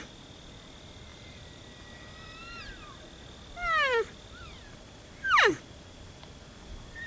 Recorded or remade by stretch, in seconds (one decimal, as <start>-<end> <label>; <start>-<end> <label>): 0.0-1.1 recorded; 1.1-1.6 remade; 1.6-7.1 recorded